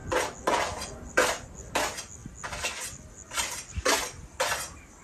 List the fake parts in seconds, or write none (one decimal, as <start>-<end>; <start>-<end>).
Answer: none

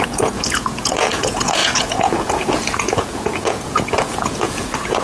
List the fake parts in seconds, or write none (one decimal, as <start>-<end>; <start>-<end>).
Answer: 0.0-5.0

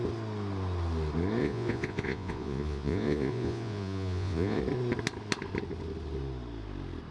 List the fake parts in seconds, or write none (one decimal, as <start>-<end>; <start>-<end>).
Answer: 1.4-4.6